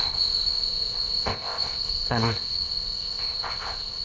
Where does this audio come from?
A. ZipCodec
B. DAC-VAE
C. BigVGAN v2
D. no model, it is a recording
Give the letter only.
A